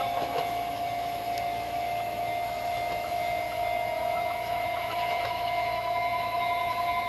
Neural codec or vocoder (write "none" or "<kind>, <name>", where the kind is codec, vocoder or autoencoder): autoencoder, DAC-VAE